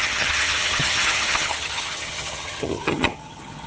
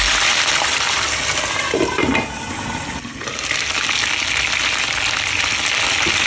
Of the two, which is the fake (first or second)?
first